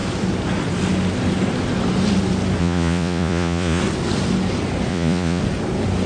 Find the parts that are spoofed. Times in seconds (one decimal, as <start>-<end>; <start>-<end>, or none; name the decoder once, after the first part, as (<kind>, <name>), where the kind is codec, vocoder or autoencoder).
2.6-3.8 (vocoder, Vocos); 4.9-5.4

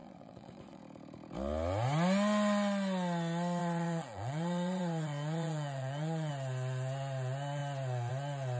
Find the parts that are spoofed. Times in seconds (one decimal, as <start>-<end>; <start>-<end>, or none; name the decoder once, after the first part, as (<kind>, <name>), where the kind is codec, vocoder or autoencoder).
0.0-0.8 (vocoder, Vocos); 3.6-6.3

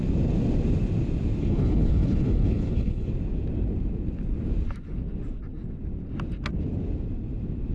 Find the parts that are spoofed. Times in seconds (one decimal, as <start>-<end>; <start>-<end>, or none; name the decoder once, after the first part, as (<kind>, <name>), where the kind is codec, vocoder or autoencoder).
1.4-3.1 (codec, HILCodec)

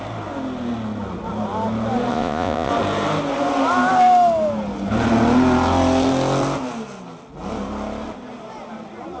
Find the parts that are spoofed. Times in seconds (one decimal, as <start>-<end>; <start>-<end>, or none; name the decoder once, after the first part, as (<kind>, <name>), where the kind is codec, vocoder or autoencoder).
2.1-2.7 (vocoder, Vocos)